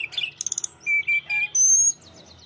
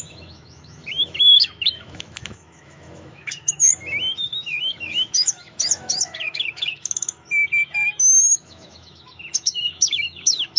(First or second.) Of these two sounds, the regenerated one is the second